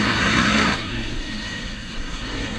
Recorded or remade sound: remade